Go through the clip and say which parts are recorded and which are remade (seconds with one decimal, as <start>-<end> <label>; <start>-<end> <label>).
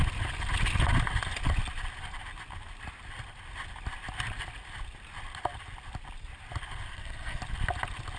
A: 0.0-6.9 recorded; 6.9-7.4 remade; 7.4-8.2 recorded